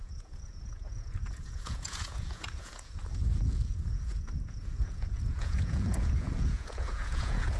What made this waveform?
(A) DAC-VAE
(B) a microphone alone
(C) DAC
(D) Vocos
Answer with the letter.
D